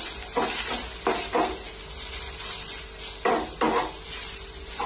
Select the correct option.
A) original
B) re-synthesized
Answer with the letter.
A